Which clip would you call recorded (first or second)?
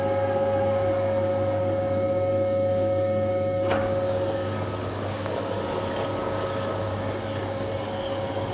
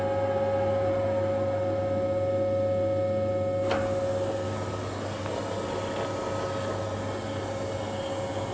second